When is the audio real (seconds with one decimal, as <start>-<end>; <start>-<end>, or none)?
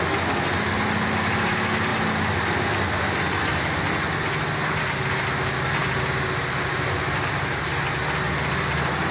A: 0.0-9.1